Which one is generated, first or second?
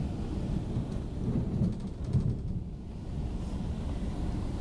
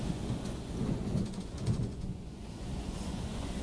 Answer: second